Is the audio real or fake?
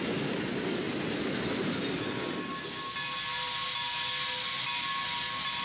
real